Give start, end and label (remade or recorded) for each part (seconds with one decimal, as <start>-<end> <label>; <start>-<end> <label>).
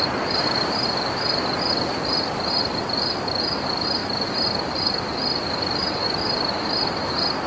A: 0.0-7.5 recorded